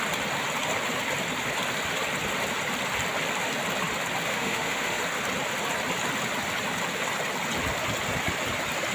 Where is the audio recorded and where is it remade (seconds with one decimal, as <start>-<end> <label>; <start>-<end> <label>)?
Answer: 0.0-4.3 recorded; 4.3-5.0 remade; 5.0-8.9 recorded